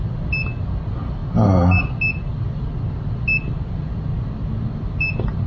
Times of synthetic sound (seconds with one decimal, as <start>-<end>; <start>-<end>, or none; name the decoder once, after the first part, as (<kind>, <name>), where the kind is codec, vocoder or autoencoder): none